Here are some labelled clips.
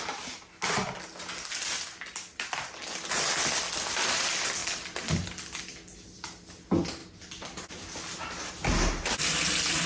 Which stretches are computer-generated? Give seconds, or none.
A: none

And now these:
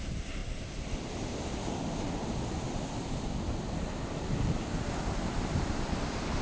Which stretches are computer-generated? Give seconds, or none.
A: none

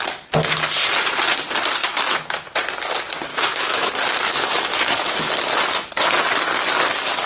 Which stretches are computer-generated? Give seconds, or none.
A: 1.8-2.6 (autoencoder, DAC-VAE); 3.3-3.9; 4.3-5.3

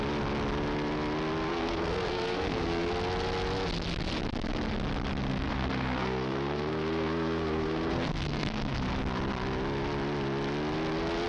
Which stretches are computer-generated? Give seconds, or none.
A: 1.5-2.9 (codec, SNAC); 5.3-8.8